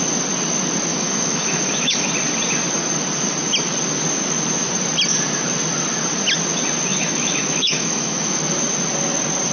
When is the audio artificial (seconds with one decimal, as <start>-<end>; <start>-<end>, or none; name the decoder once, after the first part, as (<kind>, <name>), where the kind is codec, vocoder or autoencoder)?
0.9-2.1 (autoencoder, DAC-VAE); 6.9-8.4